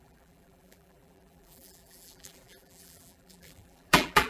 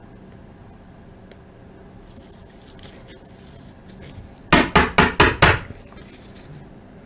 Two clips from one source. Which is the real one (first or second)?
second